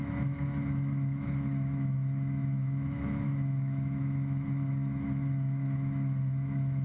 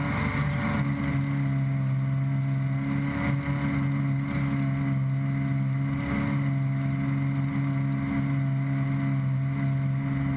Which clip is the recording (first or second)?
second